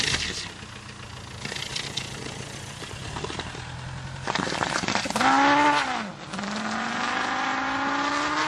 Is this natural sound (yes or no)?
yes